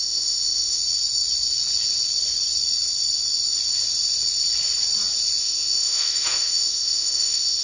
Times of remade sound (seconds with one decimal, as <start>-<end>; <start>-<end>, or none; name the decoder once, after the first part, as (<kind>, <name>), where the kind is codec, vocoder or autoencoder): 0.0-0.8 (autoencoder, DAC-VAE); 5.4-7.6